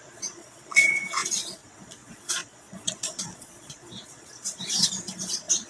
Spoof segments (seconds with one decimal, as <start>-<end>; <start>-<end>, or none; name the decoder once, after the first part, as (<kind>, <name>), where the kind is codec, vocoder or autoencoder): 0.0-5.7 (vocoder, Vocos)